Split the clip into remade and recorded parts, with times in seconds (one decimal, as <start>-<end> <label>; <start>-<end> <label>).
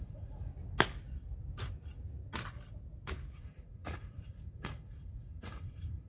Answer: 0.0-0.5 remade; 0.5-3.4 recorded; 3.4-6.1 remade